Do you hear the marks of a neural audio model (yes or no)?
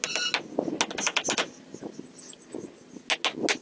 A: no